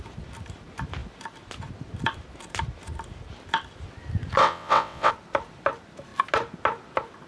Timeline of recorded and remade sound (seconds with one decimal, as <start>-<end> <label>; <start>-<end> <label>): 0.0-4.4 recorded; 4.4-5.1 remade; 5.1-7.3 recorded